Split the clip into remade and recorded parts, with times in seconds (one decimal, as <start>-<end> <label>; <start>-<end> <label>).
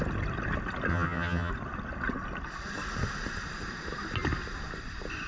0.0-0.9 recorded; 0.9-1.5 remade; 1.5-5.3 recorded